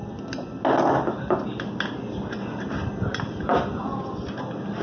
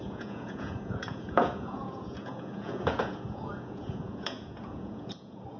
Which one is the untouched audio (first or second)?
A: first